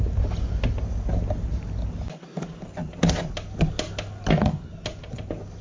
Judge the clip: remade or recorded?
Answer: recorded